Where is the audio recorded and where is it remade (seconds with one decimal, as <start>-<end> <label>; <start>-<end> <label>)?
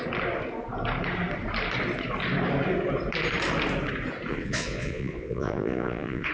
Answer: 0.0-4.3 recorded; 4.3-6.3 remade